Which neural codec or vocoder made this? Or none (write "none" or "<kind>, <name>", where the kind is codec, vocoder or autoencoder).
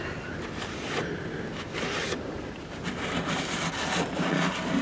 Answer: none